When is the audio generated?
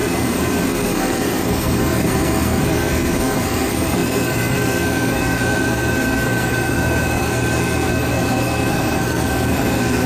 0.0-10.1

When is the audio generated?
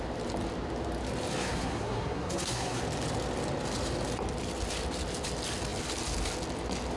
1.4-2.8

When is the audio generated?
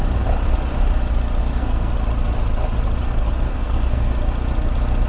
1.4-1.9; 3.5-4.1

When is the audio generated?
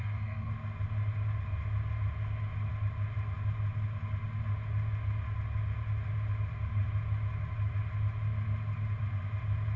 0.0-0.5